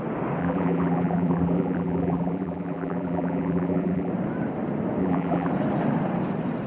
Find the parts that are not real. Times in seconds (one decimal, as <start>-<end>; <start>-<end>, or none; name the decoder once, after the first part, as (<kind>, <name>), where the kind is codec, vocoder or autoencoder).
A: 0.4-4.1 (vocoder, BigVGAN v2); 5.0-5.5